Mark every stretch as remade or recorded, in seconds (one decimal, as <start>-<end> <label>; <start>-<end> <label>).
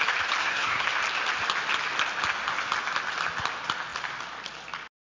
0.0-0.4 recorded; 0.4-0.9 remade; 0.9-5.1 recorded